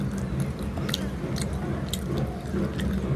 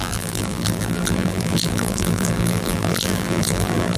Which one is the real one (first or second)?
first